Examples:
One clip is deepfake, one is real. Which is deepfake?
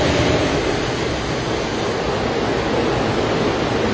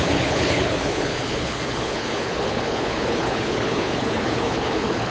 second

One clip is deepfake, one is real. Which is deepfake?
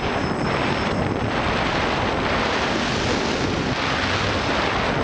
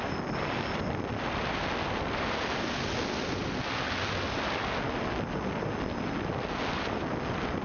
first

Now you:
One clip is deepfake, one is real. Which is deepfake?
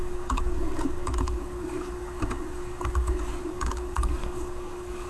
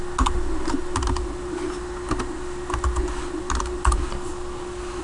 first